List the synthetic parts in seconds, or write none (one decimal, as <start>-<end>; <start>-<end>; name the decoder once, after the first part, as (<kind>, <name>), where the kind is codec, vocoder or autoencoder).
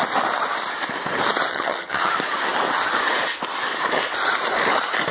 1.5-2.1 (vocoder, HiFi-GAN)